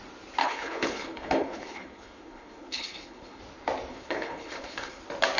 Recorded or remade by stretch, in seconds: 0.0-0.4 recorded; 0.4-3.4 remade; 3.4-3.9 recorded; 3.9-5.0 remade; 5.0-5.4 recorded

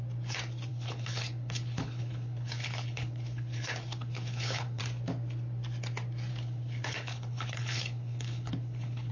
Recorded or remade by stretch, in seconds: 0.0-0.7 recorded; 0.7-4.8 remade; 4.8-6.3 recorded; 6.3-9.1 remade

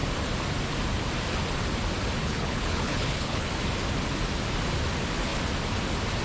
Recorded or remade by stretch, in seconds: 0.0-2.2 recorded; 2.2-3.5 remade; 3.5-6.2 recorded

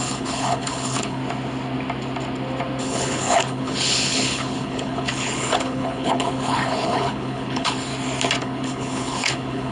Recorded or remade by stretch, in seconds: 0.0-1.2 remade; 1.2-2.8 recorded; 2.8-7.9 remade; 7.9-8.4 recorded; 8.4-9.7 remade

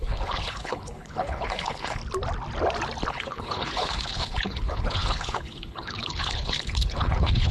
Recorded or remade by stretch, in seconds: 0.0-2.0 remade; 2.0-3.1 recorded; 3.1-7.5 remade